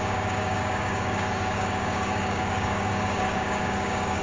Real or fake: fake